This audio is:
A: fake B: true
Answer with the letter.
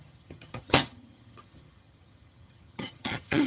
A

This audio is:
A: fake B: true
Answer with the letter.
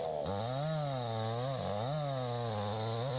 B